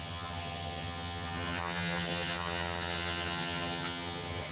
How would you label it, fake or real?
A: fake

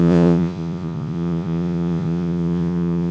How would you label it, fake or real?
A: fake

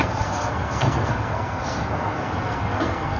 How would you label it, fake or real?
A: fake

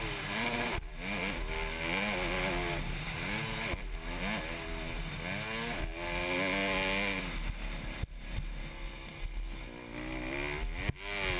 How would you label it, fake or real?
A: real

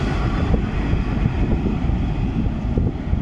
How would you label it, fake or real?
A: real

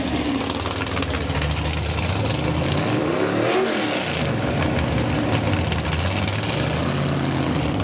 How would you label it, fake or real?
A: real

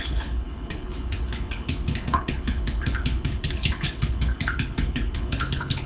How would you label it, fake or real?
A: fake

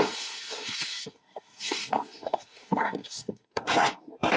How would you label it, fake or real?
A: fake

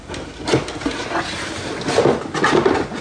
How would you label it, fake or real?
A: real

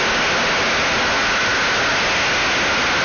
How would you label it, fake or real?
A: real